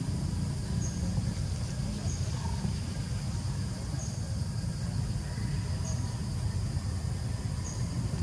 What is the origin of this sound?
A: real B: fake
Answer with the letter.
A